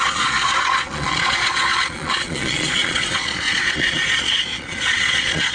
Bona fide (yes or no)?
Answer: no